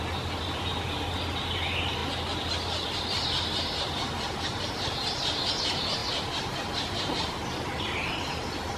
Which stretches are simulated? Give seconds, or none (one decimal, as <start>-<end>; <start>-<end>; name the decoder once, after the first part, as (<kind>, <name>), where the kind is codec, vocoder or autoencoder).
none